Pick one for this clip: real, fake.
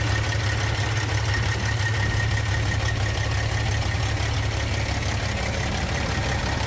real